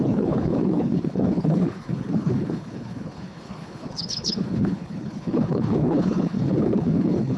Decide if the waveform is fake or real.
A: fake